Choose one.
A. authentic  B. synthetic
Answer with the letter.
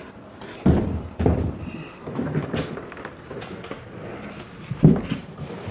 A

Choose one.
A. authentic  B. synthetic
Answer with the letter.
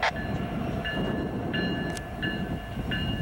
A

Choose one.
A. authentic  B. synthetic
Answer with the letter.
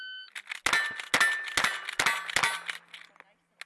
A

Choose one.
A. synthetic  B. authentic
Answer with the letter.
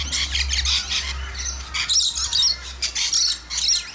B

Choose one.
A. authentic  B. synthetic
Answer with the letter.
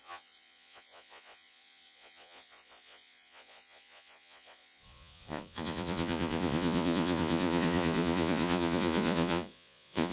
B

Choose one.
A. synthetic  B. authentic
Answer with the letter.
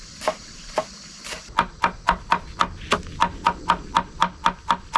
B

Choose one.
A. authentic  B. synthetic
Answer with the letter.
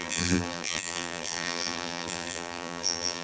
B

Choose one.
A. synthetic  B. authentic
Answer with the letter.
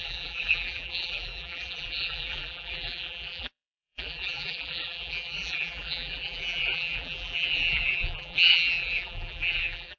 A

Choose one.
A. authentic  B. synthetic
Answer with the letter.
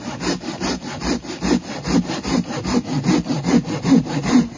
A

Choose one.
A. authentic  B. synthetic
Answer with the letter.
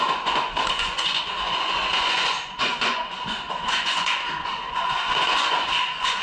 B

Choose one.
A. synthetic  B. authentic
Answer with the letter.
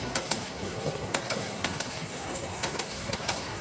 A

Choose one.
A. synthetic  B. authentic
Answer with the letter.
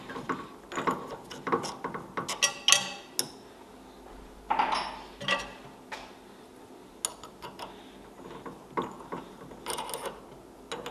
B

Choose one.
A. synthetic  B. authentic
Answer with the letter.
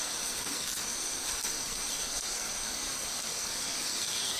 A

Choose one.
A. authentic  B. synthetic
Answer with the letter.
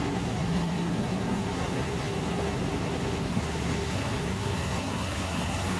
B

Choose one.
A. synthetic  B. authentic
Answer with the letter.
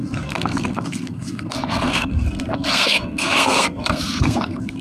A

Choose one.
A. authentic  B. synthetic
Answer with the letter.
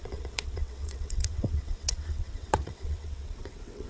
B